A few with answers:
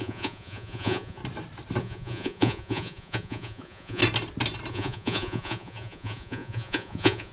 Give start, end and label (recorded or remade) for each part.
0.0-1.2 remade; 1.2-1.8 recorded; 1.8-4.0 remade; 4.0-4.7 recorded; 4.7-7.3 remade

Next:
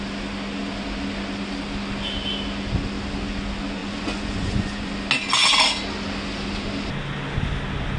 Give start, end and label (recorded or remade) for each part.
0.0-3.8 recorded; 3.8-4.9 remade; 4.9-8.0 recorded